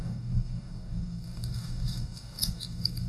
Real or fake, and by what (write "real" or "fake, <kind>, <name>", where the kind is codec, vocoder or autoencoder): fake, codec, DAC